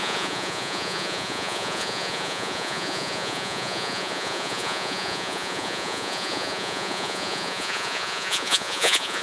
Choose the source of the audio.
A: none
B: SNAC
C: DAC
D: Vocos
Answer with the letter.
D